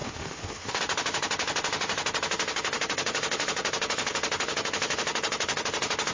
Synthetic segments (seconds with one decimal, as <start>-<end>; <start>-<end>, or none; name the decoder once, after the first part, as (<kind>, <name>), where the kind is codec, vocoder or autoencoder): 0.0-0.8 (autoencoder, DAC-VAE)